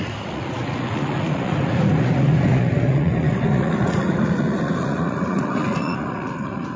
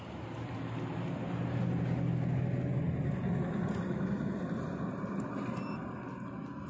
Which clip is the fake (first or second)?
first